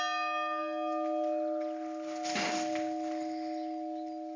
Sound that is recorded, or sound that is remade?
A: recorded